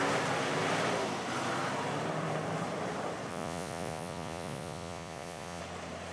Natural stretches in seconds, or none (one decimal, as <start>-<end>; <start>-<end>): 0.0-3.3; 5.6-6.1